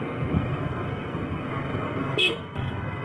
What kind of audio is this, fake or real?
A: fake